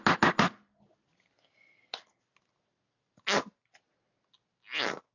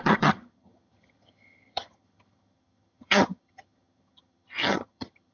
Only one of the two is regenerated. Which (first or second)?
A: second